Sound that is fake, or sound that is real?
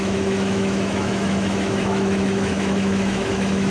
fake